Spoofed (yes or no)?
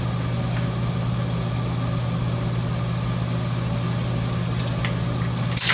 no